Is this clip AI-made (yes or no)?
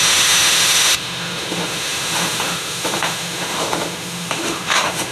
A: yes